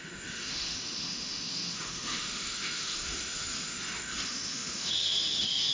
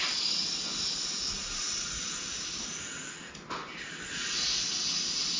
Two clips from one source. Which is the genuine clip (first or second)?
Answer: second